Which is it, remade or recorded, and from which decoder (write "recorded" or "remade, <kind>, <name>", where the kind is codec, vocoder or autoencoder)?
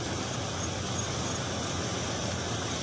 recorded